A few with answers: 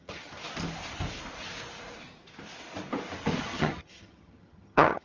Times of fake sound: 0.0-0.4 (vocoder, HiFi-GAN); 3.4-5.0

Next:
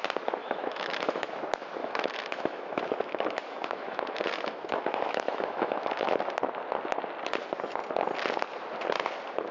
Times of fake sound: 0.4-1.3 (autoencoder, DAC-VAE); 1.8-6.1

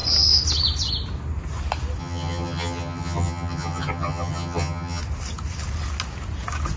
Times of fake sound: 2.0-5.0 (vocoder, HiFi-GAN)

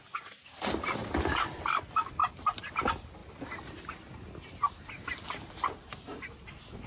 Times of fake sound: 2.2-2.7 (vocoder, BigVGAN v2)

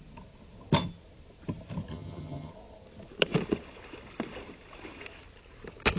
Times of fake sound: 1.9-2.5 (vocoder, HiFi-GAN)

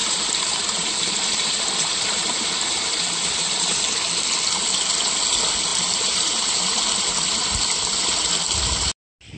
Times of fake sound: 0.0-3.8 (vocoder, BigVGAN v2); 5.7-6.8

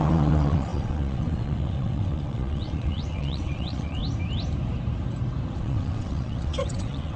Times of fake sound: 0.0-4.0 (vocoder, WaveNeXt); 5.6-7.2

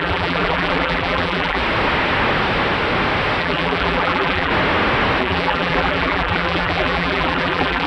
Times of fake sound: 0.0-1.6 (vocoder, BigVGAN v2); 3.4-4.5; 5.2-7.9